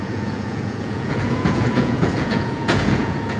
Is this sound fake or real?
fake